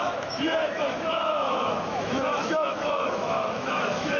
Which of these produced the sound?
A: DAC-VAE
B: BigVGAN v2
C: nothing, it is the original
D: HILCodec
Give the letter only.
A